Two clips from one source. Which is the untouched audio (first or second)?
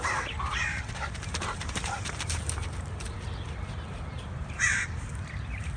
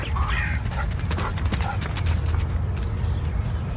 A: second